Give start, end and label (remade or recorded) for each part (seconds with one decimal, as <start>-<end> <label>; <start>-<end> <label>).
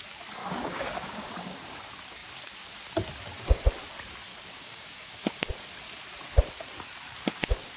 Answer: 0.0-0.4 recorded; 0.4-1.7 remade; 1.7-4.3 recorded; 4.3-5.5 remade; 5.5-7.8 recorded